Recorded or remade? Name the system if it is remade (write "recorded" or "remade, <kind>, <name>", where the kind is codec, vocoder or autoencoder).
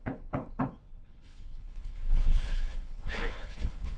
remade, codec, HILCodec